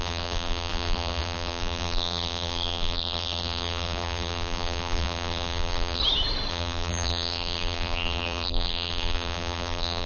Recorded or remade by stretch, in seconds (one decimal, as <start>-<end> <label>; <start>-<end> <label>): 0.0-6.0 remade; 6.0-6.5 recorded; 6.5-10.1 remade